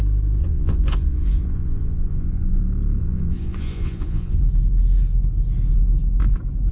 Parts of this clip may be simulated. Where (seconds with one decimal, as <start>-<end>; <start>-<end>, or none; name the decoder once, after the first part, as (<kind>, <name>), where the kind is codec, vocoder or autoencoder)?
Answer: 0.4-2.6 (vocoder, Vocos); 3.0-4.4

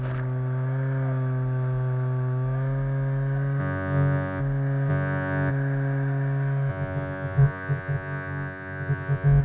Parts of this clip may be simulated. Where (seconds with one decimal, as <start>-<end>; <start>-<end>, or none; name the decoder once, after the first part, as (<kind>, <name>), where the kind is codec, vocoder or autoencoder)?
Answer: 3.6-4.4 (vocoder, Vocos); 4.9-5.5; 6.7-9.4

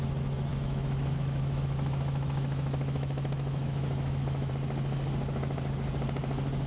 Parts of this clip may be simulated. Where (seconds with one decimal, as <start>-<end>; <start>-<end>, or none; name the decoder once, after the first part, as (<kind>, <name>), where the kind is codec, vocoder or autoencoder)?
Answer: 0.5-4.5 (autoencoder, DAC-VAE)

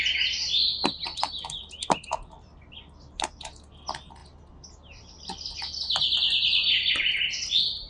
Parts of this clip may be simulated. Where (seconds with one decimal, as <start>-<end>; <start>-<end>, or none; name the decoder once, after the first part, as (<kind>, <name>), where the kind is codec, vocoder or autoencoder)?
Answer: none

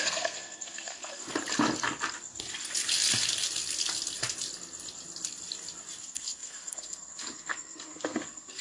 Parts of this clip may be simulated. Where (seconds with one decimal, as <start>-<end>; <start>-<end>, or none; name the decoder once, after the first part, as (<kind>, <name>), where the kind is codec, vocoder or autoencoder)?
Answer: 0.0-1.2 (codec, SNAC); 6.0-8.6